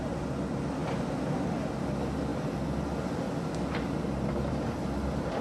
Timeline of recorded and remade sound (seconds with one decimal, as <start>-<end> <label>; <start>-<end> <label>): 0.0-5.4 recorded